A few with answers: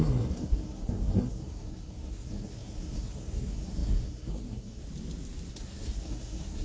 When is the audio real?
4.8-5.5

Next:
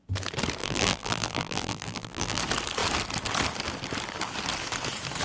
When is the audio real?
0.0-0.6; 2.4-5.2

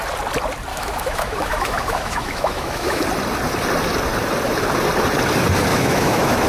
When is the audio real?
0.0-0.7; 3.0-5.7

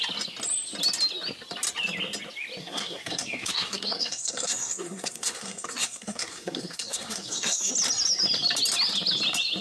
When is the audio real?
0.0-2.6; 7.7-9.6